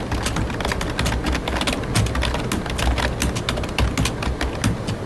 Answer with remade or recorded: recorded